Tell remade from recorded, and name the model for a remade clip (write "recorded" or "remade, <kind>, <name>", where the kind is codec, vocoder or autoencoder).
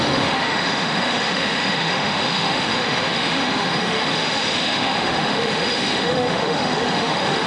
remade, autoencoder, DAC-VAE